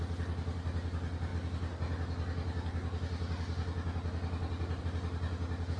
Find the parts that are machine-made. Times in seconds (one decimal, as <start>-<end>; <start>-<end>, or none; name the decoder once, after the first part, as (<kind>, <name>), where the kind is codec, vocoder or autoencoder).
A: none